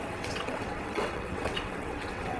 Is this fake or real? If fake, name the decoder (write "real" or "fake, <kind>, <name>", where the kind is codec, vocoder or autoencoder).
fake, vocoder, WaveNeXt